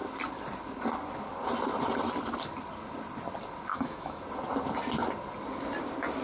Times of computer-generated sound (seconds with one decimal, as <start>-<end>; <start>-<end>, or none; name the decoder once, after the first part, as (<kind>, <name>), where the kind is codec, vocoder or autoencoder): 3.7-4.2 (autoencoder, DAC-VAE)